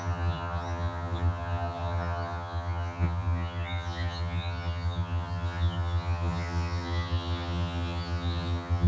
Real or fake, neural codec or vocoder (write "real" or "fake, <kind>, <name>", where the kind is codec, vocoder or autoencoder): fake, vocoder, HiFi-GAN